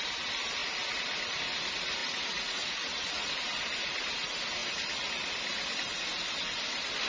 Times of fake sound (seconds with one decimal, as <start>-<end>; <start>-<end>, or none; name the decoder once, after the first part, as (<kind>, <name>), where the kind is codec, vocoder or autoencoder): 2.0-3.3 (vocoder, Vocos)